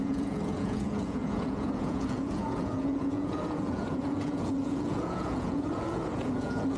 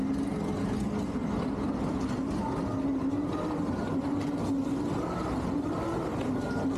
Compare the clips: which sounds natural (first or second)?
second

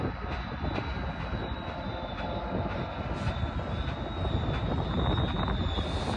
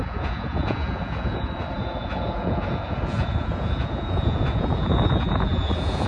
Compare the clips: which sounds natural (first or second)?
first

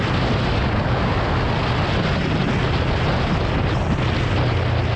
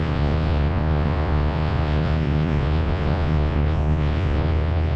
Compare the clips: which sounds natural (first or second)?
first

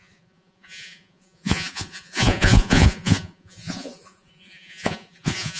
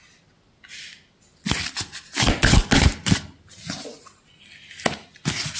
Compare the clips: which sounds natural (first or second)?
second